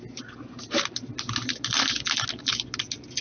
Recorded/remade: recorded